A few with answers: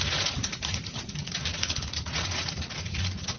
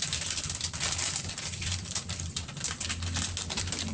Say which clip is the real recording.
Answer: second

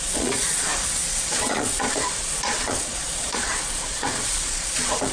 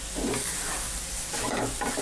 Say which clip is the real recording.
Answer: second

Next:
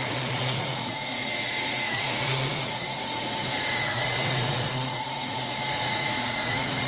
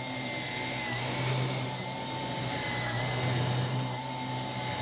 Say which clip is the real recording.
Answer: second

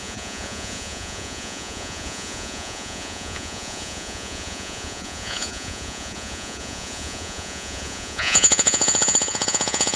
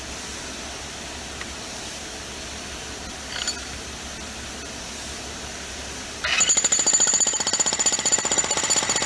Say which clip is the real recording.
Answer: second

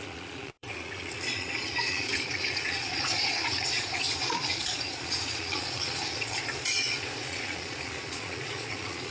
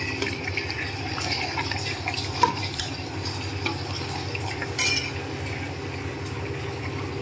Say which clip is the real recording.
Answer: second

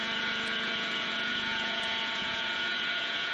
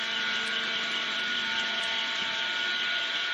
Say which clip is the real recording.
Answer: second